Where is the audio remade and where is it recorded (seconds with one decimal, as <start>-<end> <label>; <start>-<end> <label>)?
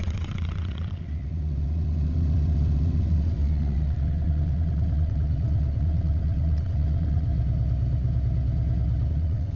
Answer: 0.0-7.3 remade; 7.3-9.1 recorded; 9.1-9.6 remade